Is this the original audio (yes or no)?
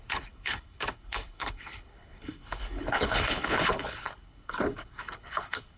no